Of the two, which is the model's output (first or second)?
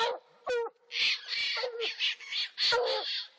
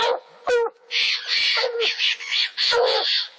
second